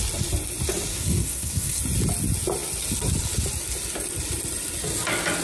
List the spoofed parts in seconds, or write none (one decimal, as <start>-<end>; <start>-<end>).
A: 0.9-1.8